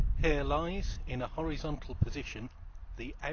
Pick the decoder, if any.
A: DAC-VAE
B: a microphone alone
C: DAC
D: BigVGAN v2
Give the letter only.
B